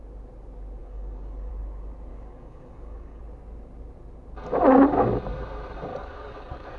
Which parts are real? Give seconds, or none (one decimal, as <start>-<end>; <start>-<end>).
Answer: 0.0-0.8; 1.5-2.1; 3.2-5.9